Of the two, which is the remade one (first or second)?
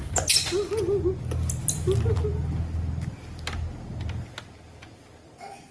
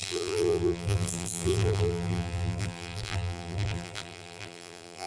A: second